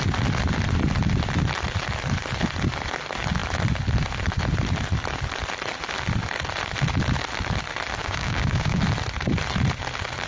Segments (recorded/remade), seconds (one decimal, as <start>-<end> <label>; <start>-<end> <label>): 0.0-8.0 recorded; 8.0-8.8 remade; 8.8-10.3 recorded